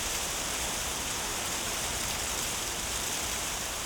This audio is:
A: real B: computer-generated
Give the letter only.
B